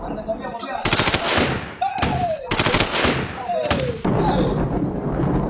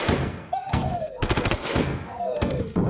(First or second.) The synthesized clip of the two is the second